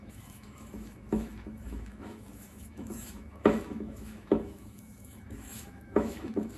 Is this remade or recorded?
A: remade